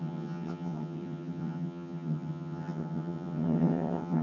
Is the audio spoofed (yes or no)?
yes